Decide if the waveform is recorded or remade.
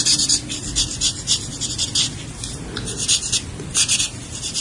recorded